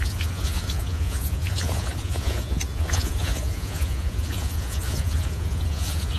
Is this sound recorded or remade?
remade